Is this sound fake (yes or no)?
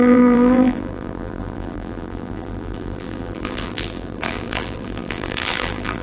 yes